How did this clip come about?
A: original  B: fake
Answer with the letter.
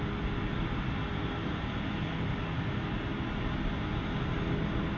A